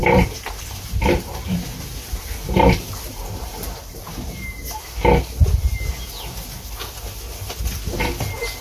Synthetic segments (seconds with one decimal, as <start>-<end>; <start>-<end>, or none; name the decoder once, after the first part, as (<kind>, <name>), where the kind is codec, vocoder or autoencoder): 0.0-4.0 (vocoder, BigVGAN v2)